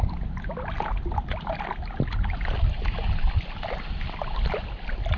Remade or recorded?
recorded